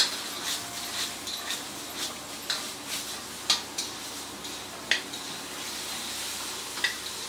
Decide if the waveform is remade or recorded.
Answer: recorded